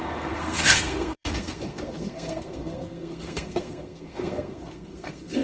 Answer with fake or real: fake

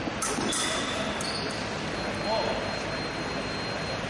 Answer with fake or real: real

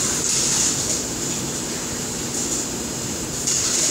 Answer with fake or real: fake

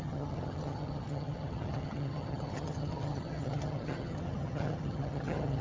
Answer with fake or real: fake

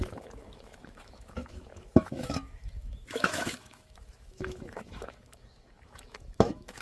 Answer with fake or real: fake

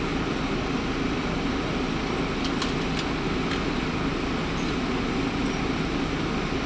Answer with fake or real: real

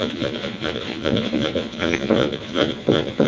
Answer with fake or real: fake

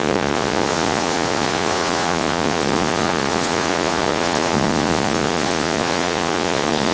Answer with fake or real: fake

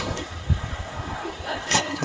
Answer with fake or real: fake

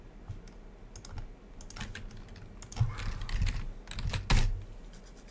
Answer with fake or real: real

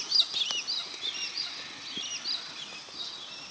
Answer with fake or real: real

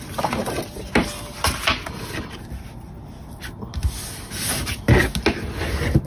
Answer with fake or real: real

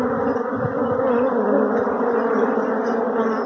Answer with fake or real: real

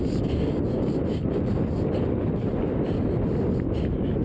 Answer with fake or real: real